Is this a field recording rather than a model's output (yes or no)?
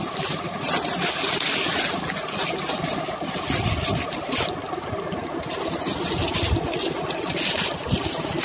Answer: yes